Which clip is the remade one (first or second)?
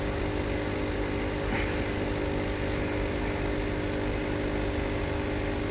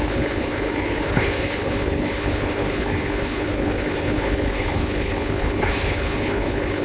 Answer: second